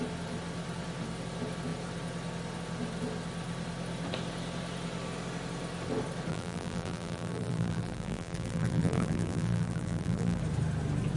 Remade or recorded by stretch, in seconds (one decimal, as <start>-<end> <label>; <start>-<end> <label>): 0.0-6.3 recorded; 6.3-10.4 remade; 10.4-11.2 recorded